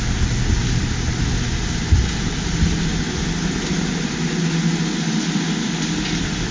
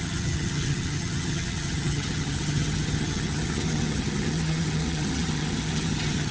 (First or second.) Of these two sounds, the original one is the first